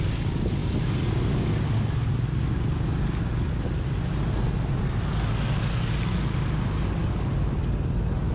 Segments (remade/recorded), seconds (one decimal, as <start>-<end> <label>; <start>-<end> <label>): 0.0-8.3 recorded